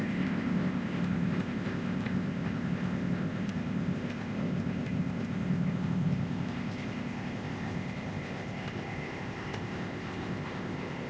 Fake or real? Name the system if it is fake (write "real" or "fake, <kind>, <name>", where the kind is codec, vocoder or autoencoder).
fake, codec, ZipCodec